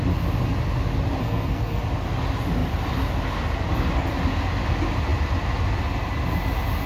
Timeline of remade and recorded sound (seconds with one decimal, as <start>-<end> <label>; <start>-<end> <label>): 0.0-1.2 recorded; 1.2-1.8 remade; 1.8-6.9 recorded

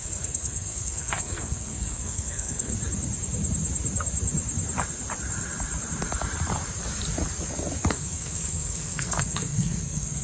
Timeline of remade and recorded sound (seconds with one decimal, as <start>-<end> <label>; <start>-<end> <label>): 0.0-2.7 remade; 2.7-7.9 recorded; 7.9-10.2 remade

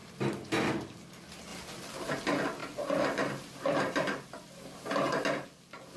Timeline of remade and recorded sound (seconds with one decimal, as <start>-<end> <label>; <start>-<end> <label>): 0.0-6.0 recorded

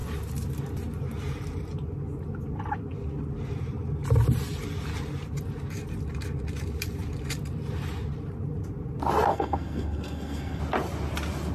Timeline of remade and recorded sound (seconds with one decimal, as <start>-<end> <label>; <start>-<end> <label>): 0.0-9.3 recorded; 9.3-10.6 remade; 10.6-11.5 recorded